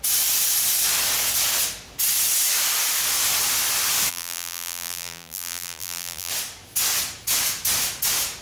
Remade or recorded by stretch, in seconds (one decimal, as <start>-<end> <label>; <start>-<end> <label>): 0.0-4.1 recorded; 4.1-6.3 remade; 6.3-8.4 recorded